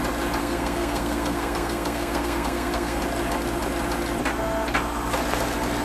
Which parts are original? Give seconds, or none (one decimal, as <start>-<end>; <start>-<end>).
0.0-0.4; 3.0-5.8